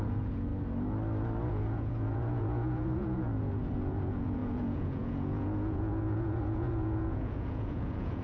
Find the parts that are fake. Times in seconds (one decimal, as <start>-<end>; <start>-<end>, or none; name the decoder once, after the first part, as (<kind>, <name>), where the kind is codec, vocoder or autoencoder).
0.0-0.5 (vocoder, Vocos); 1.5-8.2